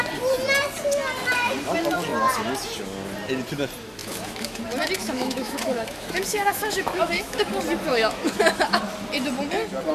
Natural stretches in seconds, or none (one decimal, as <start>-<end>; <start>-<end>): 0.0-4.0; 4.6-5.0; 7.5-7.9; 8.8-9.9